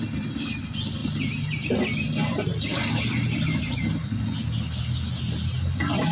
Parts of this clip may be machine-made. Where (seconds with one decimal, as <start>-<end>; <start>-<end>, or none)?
none